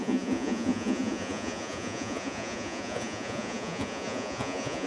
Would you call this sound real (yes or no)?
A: no